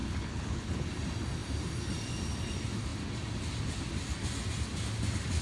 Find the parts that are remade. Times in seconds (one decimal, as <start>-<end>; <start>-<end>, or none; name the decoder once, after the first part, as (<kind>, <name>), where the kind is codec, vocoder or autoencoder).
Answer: 0.0-0.9 (codec, HILCodec)